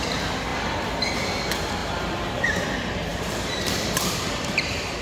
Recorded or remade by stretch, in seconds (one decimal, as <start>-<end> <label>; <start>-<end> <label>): 0.0-1.8 recorded; 1.8-2.6 remade; 2.6-3.1 recorded; 3.1-5.0 remade